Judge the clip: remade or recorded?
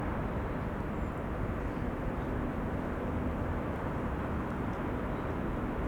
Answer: recorded